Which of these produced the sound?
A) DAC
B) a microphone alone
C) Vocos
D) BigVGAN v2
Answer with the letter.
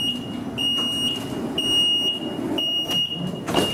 B